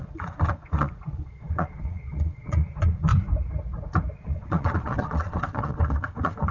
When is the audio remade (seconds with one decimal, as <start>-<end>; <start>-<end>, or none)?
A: 0.0-3.1; 4.2-6.5